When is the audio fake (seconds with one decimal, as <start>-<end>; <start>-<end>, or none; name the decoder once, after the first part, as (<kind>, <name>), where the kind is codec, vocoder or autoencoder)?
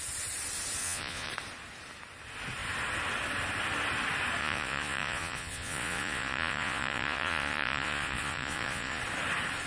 0.8-1.3 (vocoder, Vocos); 4.4-9.0